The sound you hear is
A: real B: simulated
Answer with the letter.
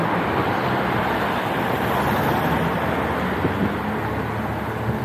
A